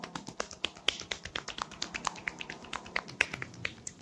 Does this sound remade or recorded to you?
recorded